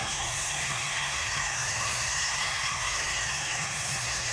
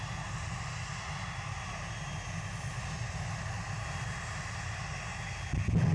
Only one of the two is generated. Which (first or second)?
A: first